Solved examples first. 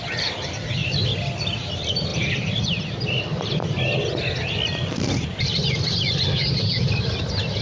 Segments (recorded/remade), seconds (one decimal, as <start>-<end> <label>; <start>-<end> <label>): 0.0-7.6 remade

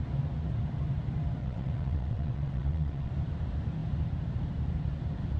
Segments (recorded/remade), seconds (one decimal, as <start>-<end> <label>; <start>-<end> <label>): 0.0-1.4 recorded; 1.4-3.1 remade; 3.1-5.4 recorded

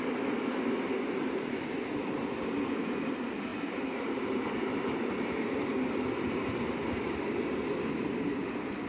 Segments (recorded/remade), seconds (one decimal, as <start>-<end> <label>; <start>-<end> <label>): 0.0-3.5 recorded; 3.5-4.4 remade; 4.4-8.9 recorded

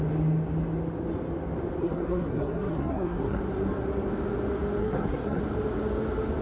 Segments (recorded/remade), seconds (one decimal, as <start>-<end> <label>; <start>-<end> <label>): 0.0-1.8 recorded; 1.8-3.4 remade; 3.4-4.8 recorded; 4.8-5.4 remade; 5.4-6.4 recorded

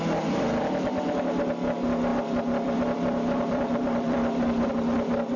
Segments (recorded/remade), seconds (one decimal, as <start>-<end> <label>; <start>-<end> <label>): 0.0-2.1 recorded; 2.1-4.7 remade; 4.7-5.4 recorded